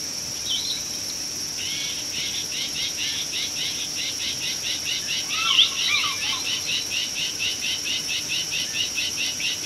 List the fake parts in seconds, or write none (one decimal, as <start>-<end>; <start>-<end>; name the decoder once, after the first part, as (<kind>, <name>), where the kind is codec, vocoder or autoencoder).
7.0-8.2 (vocoder, BigVGAN v2)